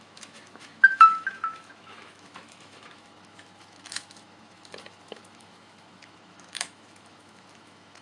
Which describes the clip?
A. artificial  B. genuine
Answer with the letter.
A